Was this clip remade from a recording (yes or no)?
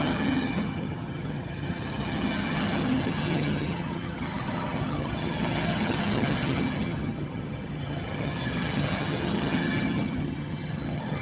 yes